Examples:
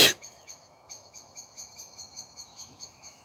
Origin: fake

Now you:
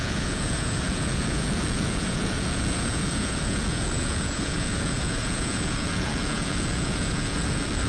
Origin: fake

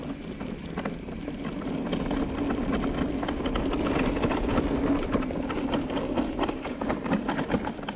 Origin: real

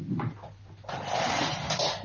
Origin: real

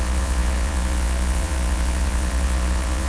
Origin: fake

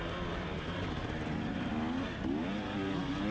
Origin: real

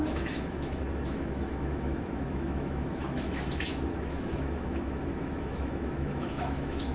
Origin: fake